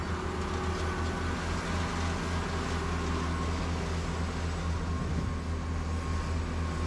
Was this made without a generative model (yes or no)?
yes